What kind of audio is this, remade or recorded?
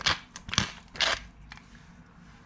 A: recorded